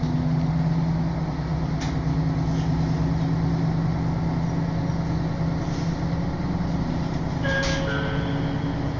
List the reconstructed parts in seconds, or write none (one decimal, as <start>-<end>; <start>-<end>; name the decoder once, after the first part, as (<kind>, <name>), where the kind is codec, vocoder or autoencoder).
none